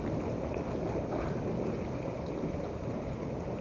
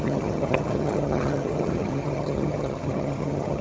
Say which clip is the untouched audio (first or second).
first